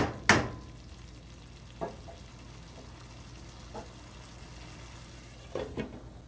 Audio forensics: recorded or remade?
recorded